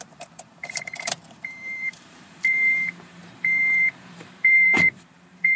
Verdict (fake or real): fake